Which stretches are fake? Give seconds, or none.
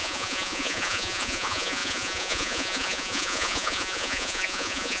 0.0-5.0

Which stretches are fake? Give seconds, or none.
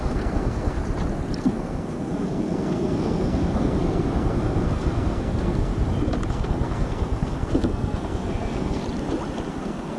0.0-0.8; 1.4-5.7; 6.3-8.8; 9.5-10.0